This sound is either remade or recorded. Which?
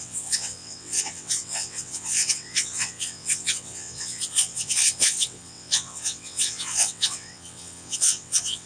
remade